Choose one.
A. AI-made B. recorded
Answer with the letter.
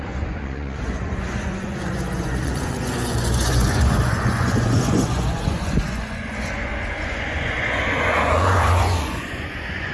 A